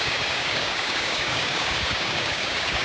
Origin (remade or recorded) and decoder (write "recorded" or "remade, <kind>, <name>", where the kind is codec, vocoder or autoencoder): remade, codec, DAC